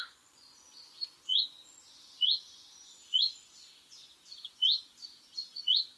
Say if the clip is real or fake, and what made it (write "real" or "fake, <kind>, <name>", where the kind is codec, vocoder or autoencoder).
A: fake, vocoder, Vocos